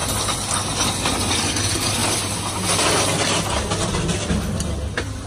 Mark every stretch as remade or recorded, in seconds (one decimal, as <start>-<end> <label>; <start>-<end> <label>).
0.0-5.3 recorded